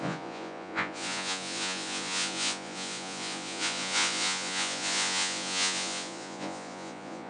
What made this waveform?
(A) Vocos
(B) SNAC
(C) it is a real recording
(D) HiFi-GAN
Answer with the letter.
A